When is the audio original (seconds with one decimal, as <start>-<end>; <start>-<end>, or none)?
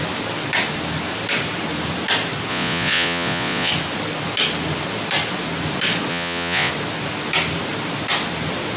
0.0-2.5; 3.7-6.1; 6.7-8.8